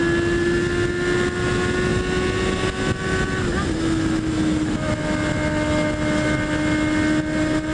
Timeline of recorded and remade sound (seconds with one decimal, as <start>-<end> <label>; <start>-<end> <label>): 0.0-7.7 recorded